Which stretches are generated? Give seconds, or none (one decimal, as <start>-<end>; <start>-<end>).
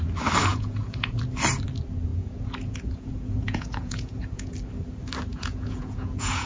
0.5-1.2; 2.1-4.5; 5.3-6.5